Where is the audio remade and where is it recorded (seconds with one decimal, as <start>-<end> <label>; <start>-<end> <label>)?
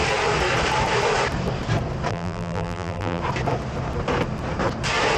0.0-2.1 recorded; 2.1-3.2 remade; 3.2-5.2 recorded